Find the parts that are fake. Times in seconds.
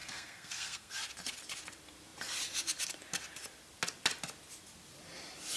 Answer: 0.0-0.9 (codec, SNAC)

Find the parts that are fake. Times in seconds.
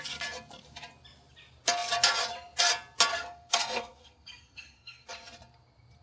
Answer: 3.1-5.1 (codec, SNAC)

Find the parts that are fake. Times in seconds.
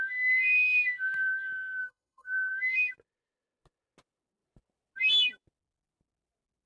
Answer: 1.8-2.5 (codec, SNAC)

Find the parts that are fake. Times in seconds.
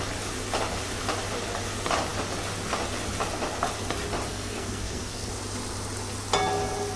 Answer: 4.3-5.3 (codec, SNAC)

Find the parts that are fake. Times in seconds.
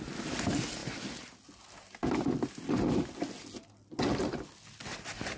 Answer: none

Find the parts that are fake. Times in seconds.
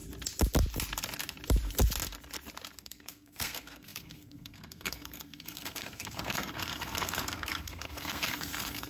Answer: 2.8-8.9 (codec, SNAC)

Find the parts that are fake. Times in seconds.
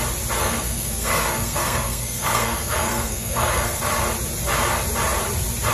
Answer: 0.4-3.8 (codec, SNAC)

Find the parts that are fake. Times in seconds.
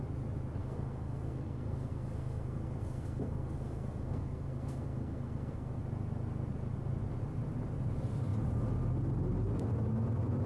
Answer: 0.6-5.8 (codec, SNAC)